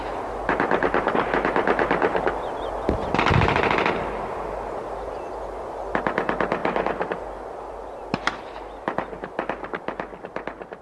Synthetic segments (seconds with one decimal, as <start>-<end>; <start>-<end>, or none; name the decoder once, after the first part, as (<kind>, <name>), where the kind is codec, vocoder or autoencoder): none